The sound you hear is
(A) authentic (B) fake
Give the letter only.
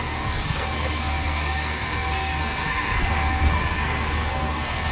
B